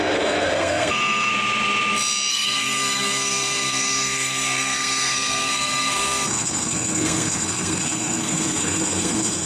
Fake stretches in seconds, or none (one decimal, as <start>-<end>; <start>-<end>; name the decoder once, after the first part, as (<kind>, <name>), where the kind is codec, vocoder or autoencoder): 0.0-1.3 (codec, SNAC); 2.3-9.5